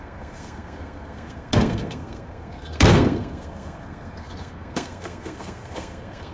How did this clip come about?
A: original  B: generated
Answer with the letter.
B